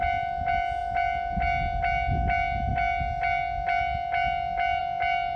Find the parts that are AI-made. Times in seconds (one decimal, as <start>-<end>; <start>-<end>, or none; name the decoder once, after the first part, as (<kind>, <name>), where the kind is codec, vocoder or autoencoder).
none